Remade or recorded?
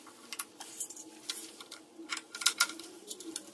remade